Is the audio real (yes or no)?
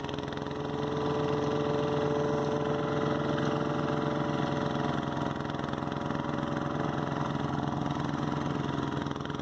yes